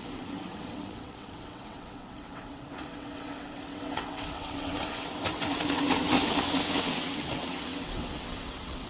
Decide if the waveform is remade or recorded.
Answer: remade